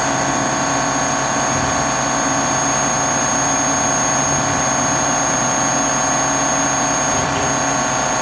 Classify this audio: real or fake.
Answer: real